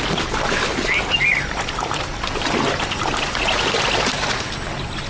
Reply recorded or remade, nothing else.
recorded